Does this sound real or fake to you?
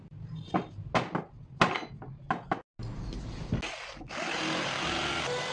real